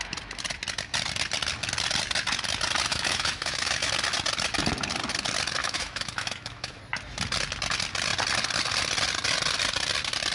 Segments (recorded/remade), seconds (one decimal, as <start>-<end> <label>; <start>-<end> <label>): 0.0-2.9 recorded; 2.9-3.9 remade; 3.9-5.6 recorded; 5.6-6.8 remade; 6.8-10.3 recorded